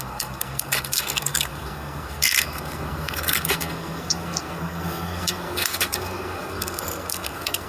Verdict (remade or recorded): remade